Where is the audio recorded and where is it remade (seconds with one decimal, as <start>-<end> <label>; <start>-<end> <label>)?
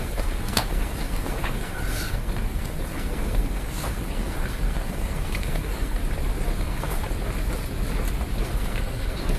0.0-6.0 remade; 6.0-6.6 recorded; 6.6-7.0 remade; 7.0-8.4 recorded; 8.4-9.4 remade